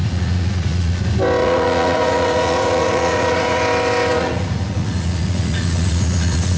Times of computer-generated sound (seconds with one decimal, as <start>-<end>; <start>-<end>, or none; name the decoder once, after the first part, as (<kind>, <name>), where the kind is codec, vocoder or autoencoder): 0.0-1.0 (vocoder, Vocos); 1.4-3.6; 4.1-6.6